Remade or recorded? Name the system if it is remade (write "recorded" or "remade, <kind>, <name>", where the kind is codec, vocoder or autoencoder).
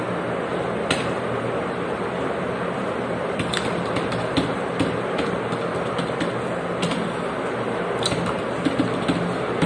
recorded